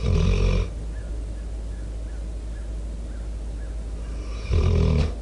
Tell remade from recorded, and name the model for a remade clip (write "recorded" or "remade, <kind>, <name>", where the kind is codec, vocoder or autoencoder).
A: recorded